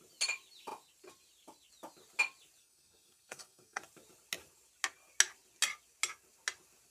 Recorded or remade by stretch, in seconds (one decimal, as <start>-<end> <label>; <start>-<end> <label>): 0.0-2.6 recorded; 2.6-3.8 remade; 3.8-6.9 recorded